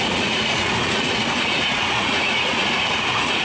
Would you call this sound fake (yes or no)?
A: yes